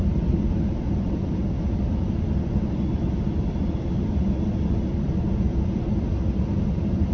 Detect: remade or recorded recorded